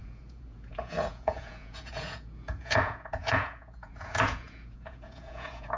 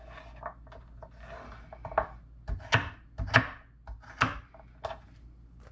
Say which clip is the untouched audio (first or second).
second